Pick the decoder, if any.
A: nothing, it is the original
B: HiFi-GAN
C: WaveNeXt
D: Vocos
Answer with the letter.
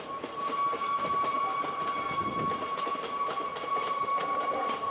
A